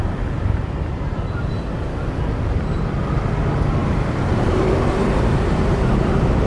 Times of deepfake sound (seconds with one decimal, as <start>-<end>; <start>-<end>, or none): 0.0-1.5; 3.8-5.9